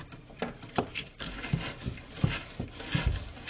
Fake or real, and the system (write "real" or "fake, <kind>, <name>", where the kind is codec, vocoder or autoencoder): real